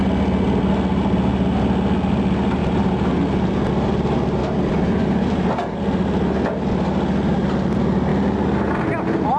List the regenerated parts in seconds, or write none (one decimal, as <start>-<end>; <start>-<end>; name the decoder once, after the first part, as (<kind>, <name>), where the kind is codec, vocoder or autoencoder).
2.6-3.7 (vocoder, BigVGAN v2); 4.4-5.8